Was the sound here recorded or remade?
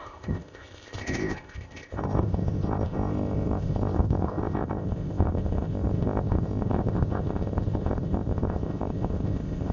remade